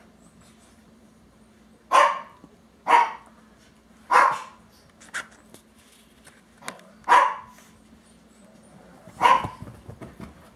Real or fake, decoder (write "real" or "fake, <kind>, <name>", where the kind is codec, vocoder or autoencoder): real